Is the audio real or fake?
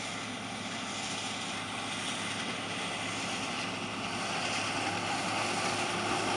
real